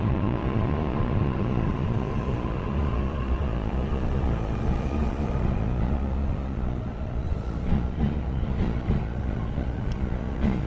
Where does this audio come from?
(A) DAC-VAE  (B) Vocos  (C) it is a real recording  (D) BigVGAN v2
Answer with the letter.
B